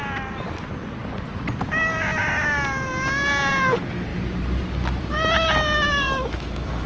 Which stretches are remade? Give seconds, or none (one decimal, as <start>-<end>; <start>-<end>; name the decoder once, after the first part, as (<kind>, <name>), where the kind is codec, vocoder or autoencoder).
5.9-6.9 (autoencoder, DAC-VAE)